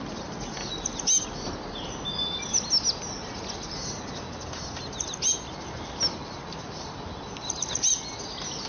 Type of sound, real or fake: real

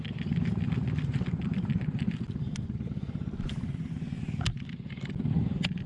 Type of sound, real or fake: real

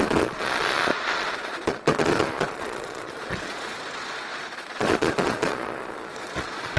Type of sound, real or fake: fake